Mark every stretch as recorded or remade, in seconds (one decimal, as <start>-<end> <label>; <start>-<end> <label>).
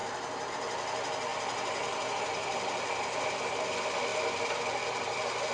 0.0-5.5 recorded